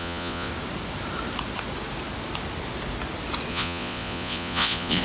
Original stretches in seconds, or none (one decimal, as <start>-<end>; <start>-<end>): 0.5-3.5